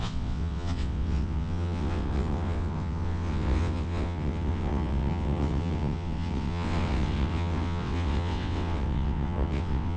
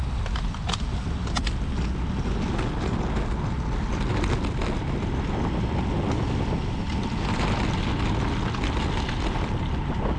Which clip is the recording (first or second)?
second